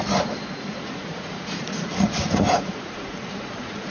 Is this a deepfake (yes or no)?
yes